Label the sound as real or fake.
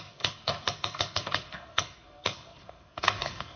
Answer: fake